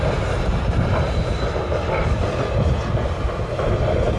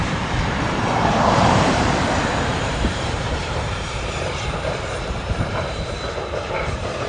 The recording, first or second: first